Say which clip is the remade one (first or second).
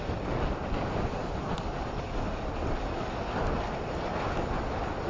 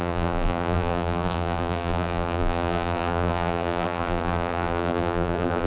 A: second